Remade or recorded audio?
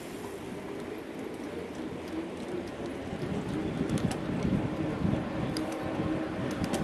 recorded